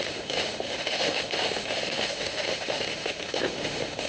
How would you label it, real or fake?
fake